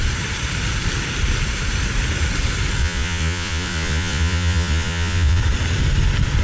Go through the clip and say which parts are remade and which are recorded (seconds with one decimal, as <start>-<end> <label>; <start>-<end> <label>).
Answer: 0.0-2.8 recorded; 2.8-5.4 remade; 5.4-6.4 recorded